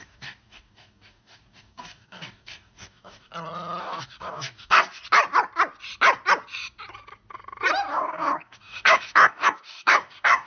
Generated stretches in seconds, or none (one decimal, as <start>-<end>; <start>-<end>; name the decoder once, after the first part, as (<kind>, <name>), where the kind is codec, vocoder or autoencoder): 0.0-3.3 (codec, DAC); 3.8-5.0; 7.9-10.5